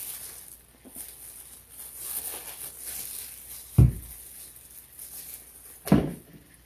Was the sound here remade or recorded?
recorded